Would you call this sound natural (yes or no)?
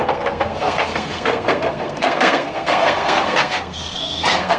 no